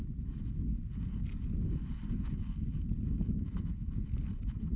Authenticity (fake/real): real